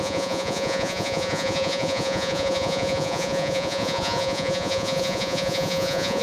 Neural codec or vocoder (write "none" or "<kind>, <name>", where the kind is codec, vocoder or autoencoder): vocoder, Vocos